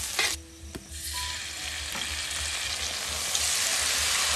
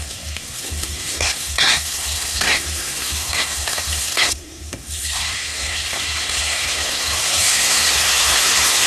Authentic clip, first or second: first